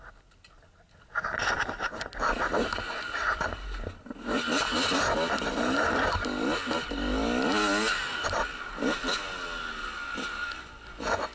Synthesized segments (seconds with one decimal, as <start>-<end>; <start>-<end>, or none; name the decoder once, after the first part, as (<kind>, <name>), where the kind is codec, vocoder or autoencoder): 2.5-3.6 (vocoder, BigVGAN v2)